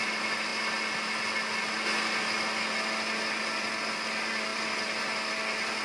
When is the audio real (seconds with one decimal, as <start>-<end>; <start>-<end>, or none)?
0.0-5.8